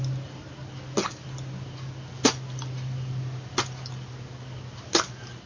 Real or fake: real